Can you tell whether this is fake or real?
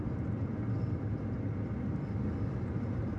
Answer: real